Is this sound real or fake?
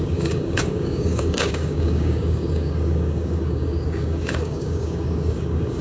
fake